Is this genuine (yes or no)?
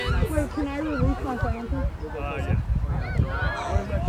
yes